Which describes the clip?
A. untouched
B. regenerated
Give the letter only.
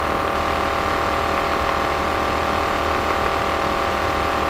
A